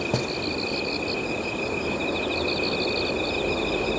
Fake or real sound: real